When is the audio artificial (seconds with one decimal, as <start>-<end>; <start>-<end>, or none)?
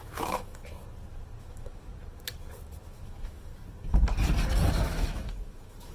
0.0-0.6; 1.4-1.9; 2.8-3.5; 4.7-5.9